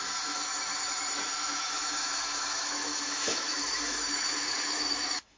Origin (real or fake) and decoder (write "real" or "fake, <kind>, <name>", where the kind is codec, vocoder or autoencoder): fake, autoencoder, DAC-VAE